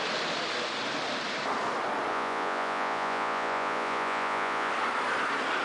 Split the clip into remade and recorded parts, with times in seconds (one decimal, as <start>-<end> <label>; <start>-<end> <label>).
0.0-2.1 recorded; 2.1-4.7 remade; 4.7-5.6 recorded